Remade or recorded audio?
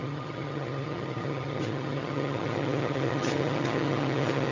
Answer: remade